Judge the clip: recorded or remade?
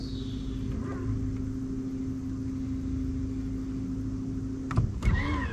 recorded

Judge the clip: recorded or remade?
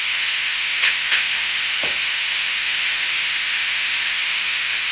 remade